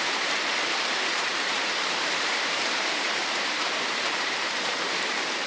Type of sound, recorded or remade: remade